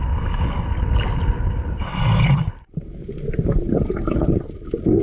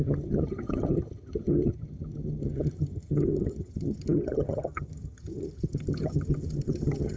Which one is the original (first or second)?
first